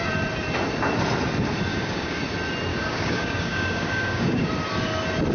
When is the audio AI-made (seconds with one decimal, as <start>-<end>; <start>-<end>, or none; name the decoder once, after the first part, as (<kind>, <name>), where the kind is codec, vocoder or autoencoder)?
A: 1.7-2.2 (codec, DAC); 2.7-4.5